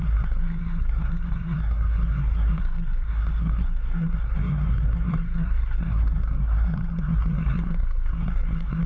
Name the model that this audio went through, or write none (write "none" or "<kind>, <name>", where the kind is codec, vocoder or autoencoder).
codec, SNAC